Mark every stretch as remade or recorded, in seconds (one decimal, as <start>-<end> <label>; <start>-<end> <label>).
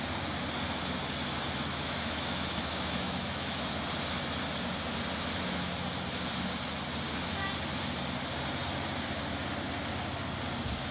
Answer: 0.0-1.7 recorded; 1.7-3.7 remade; 3.7-10.9 recorded